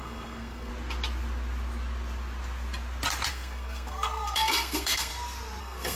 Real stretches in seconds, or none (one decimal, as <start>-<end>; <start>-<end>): 0.7-3.3; 5.1-5.6